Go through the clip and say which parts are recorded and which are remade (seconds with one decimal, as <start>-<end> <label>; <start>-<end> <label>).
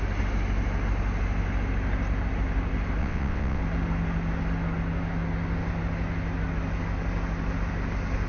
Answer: 0.0-3.0 recorded; 3.0-3.6 remade; 3.6-8.3 recorded